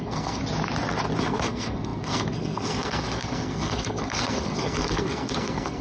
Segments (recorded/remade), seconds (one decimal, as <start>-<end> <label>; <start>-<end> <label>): 0.0-0.4 remade; 0.4-1.2 recorded; 1.2-5.8 remade